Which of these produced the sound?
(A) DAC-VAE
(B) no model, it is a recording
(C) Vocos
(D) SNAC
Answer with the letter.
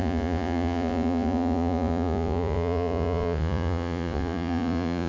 C